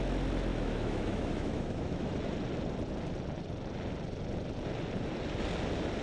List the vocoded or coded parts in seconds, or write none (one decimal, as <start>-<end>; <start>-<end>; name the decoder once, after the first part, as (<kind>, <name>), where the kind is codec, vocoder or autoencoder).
0.5-2.1 (autoencoder, DAC-VAE)